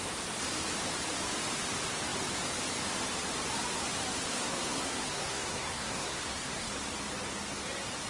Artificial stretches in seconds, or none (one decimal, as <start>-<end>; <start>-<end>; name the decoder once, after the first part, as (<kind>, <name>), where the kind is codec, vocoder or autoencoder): 4.3-6.7 (codec, SNAC)